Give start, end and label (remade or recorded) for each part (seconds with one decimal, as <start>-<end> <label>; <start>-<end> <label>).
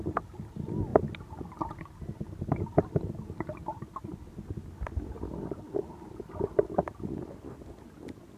0.0-8.4 recorded